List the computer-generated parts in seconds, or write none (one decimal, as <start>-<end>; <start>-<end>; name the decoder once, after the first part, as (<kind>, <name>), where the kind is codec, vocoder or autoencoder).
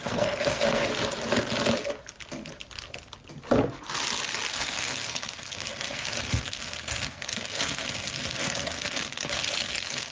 0.0-0.9 (codec, SNAC); 4.5-10.1